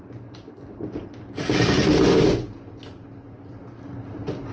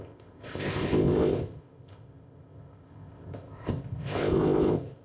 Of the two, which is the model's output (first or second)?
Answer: second